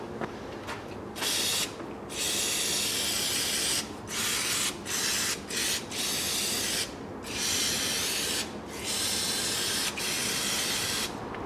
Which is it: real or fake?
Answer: real